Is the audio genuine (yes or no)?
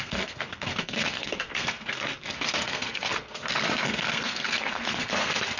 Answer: no